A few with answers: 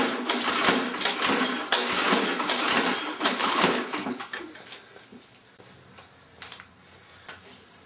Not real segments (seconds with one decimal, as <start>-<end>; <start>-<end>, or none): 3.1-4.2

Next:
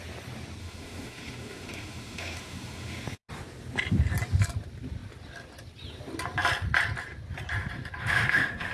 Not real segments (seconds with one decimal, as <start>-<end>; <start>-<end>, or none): 0.6-3.3; 8.0-8.7

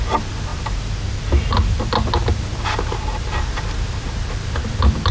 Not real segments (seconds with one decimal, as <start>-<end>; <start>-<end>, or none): none

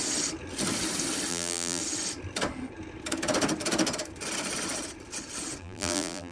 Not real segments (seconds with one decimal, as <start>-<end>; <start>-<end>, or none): 1.3-1.8; 5.6-6.3

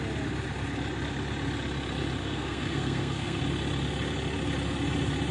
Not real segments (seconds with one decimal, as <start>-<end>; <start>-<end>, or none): 2.2-3.4

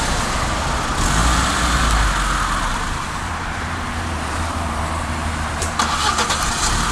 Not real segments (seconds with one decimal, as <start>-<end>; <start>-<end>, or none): 1.2-1.8; 2.7-6.1